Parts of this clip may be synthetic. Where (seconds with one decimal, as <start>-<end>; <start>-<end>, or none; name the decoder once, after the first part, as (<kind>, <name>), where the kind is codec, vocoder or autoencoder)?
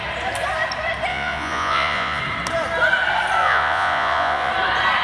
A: 1.1-2.2 (vocoder, Vocos); 3.4-4.5